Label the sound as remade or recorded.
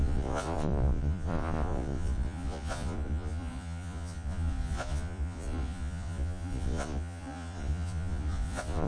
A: remade